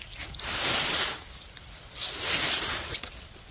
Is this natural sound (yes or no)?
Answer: yes